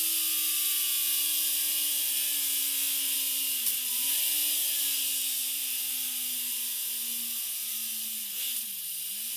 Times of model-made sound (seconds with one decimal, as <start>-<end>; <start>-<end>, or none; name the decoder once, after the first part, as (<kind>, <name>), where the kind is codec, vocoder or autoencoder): none